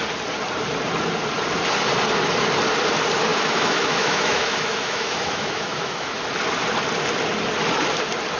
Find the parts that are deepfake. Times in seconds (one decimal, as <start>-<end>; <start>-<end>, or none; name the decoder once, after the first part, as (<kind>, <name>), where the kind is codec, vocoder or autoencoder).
3.3-6.2 (autoencoder, DAC-VAE)